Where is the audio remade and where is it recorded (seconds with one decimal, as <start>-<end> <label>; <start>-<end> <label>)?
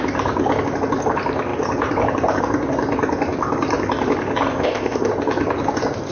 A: 0.0-4.5 recorded; 4.5-5.1 remade; 5.1-6.1 recorded